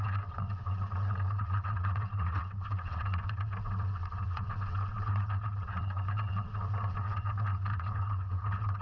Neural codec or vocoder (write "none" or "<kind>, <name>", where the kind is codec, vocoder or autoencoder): vocoder, WaveNeXt